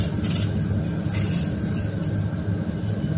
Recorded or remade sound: remade